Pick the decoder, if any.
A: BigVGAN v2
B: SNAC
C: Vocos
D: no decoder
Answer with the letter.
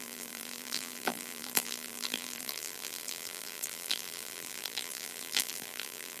A